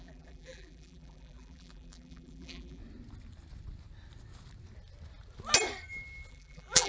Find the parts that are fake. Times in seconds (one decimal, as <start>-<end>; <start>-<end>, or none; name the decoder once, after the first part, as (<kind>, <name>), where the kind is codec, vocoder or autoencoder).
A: 0.0-2.8 (vocoder, BigVGAN v2); 6.3-6.9